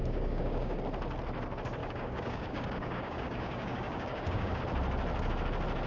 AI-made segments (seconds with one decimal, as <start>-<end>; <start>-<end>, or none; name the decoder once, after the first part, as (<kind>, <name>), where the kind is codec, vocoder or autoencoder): 0.0-0.8 (codec, DAC); 1.8-4.6